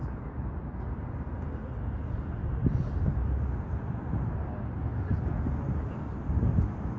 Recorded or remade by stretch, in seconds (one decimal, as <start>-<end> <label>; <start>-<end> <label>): 0.0-7.0 recorded